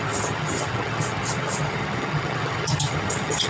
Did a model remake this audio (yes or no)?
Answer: yes